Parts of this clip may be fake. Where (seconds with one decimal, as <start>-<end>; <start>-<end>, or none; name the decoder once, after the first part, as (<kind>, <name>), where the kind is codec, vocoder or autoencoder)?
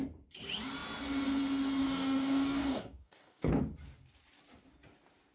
1.8-3.5 (codec, DAC)